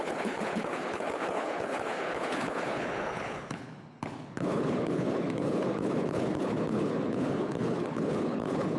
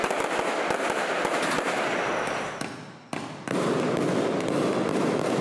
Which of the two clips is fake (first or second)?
first